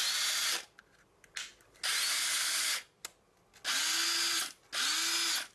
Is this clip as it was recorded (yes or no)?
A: yes